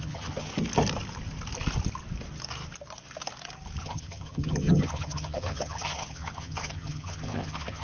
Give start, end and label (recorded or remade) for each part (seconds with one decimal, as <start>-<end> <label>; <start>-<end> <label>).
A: 0.0-0.5 remade; 0.5-3.8 recorded; 3.8-7.8 remade